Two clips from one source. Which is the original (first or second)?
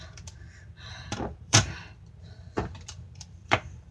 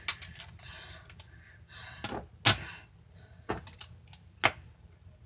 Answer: second